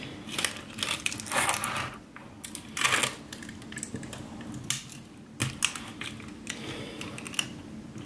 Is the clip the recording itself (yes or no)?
yes